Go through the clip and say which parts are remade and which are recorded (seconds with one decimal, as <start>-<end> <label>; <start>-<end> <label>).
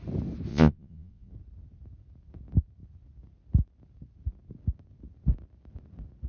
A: 0.0-0.5 recorded; 0.5-1.3 remade; 1.3-6.3 recorded